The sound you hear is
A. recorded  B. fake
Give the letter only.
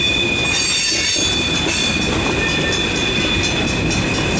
A